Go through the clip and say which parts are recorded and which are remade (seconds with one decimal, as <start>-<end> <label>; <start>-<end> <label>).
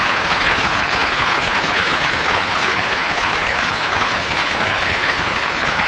0.0-5.9 remade